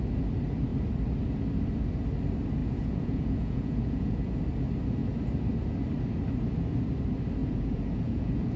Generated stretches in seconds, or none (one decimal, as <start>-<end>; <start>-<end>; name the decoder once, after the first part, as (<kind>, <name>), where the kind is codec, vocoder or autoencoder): 2.6-4.3 (vocoder, Vocos); 7.4-8.6